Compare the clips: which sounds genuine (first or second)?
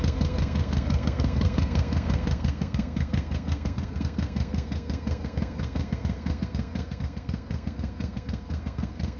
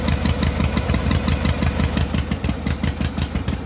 second